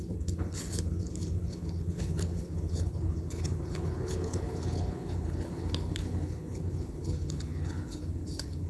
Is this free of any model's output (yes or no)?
no